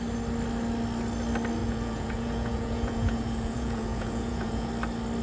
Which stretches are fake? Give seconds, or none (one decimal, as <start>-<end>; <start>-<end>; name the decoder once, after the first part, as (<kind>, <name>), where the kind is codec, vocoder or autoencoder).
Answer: 1.6-4.7 (vocoder, Vocos)